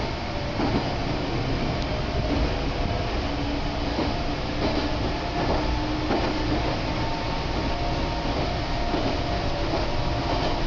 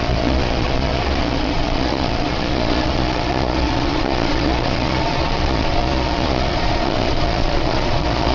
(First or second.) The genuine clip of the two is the first